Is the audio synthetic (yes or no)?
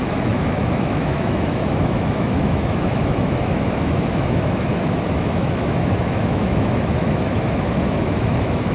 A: yes